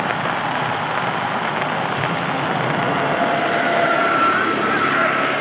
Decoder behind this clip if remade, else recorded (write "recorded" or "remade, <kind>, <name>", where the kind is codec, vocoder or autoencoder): recorded